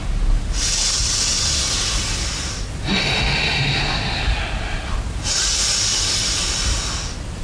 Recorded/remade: recorded